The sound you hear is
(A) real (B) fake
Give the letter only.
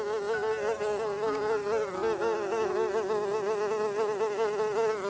A